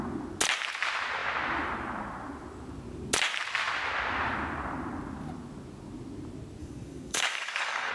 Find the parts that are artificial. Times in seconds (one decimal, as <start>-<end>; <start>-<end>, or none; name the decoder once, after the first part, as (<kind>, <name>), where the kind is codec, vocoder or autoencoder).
6.6-7.9 (codec, DAC)